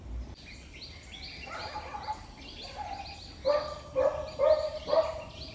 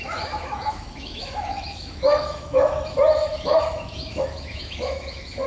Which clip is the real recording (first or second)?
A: first